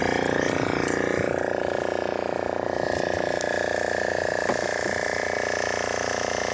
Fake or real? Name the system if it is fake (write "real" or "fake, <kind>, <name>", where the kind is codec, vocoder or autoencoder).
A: real